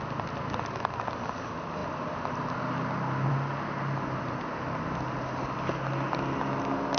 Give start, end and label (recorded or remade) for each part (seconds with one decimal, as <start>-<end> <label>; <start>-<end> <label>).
0.0-7.0 recorded